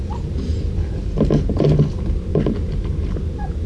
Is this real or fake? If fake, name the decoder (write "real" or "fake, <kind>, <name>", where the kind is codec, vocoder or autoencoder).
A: real